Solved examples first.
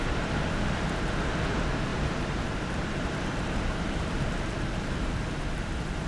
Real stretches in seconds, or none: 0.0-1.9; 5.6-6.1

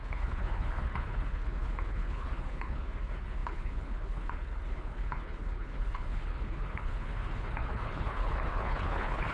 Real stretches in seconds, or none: none

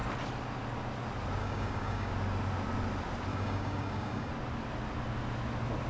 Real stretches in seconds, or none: 0.0-1.4; 2.1-3.3; 4.3-5.9

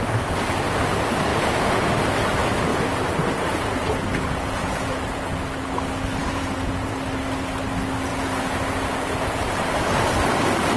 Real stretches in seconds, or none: 0.0-1.3; 1.9-2.7; 5.4-6.2; 6.9-8.1; 9.1-10.8